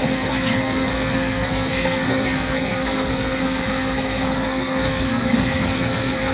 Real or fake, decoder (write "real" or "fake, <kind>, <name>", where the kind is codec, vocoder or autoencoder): fake, codec, SNAC